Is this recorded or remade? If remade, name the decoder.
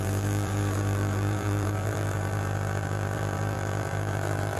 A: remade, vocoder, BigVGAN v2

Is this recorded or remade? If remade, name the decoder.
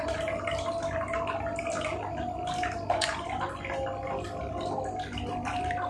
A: remade, vocoder, BigVGAN v2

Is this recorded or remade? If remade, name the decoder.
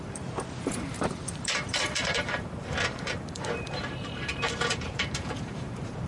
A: remade, vocoder, BigVGAN v2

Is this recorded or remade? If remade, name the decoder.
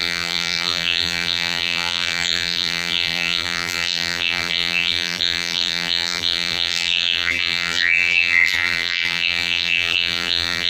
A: remade, vocoder, BigVGAN v2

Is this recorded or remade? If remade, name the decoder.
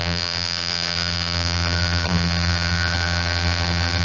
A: remade, vocoder, BigVGAN v2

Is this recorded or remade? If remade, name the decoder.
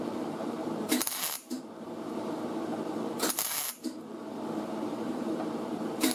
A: remade, vocoder, BigVGAN v2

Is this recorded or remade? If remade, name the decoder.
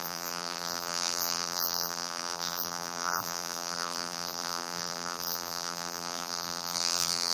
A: remade, vocoder, BigVGAN v2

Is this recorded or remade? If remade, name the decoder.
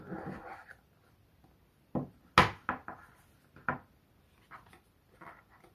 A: recorded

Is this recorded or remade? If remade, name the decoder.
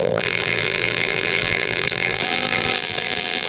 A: remade, vocoder, BigVGAN v2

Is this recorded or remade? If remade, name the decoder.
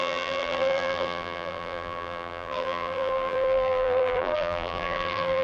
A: remade, vocoder, BigVGAN v2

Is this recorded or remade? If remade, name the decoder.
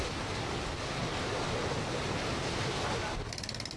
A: recorded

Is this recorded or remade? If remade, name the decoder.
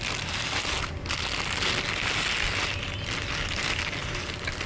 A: recorded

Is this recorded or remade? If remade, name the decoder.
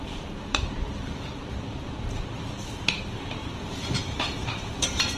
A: remade, vocoder, BigVGAN v2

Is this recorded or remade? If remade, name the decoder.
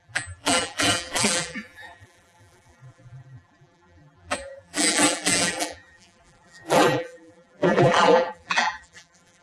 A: remade, vocoder, BigVGAN v2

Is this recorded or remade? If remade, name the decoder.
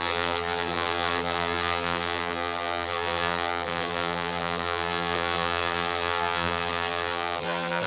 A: remade, vocoder, BigVGAN v2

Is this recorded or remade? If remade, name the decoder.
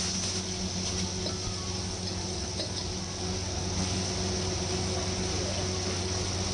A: recorded